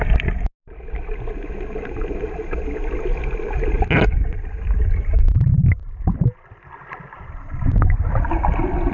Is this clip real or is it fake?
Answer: real